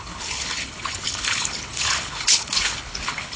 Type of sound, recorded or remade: remade